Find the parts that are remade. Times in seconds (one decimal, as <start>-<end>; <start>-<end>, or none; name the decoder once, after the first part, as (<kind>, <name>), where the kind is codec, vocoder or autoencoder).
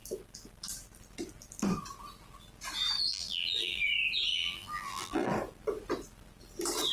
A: 3.1-3.8 (vocoder, BigVGAN v2); 4.3-5.3